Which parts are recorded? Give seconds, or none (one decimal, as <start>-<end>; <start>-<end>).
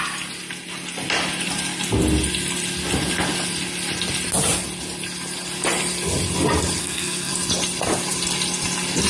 0.0-6.8; 7.3-9.1